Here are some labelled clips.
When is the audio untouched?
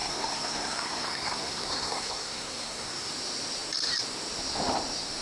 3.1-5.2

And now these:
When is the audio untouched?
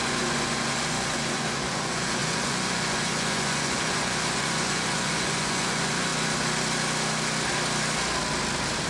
6.1-8.9